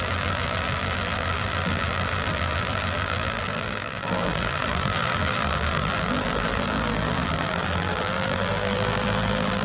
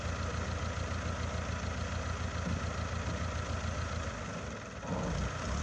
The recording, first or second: second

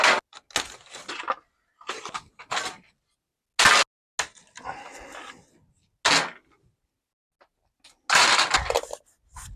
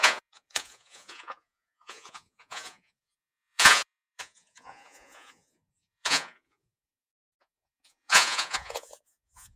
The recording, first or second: first